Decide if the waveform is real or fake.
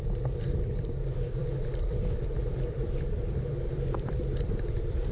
fake